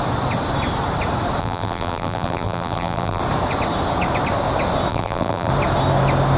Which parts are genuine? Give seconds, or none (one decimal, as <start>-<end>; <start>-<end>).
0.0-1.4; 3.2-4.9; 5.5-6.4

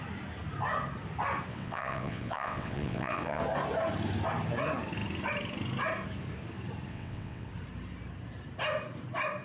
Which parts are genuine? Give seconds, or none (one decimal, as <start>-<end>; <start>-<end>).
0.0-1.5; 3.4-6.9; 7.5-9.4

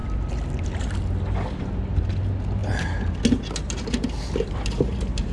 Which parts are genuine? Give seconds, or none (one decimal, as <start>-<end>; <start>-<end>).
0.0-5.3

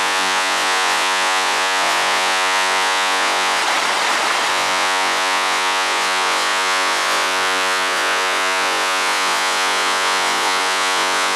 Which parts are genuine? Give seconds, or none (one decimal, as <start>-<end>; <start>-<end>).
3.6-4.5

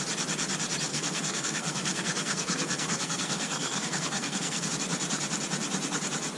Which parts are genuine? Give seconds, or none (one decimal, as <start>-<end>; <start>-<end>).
0.0-0.9; 4.7-6.4